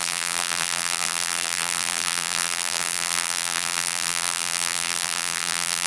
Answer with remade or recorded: remade